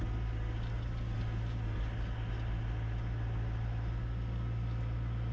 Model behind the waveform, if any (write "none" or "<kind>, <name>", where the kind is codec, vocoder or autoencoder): none